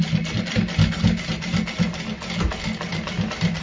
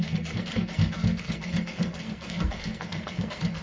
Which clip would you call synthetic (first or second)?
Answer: second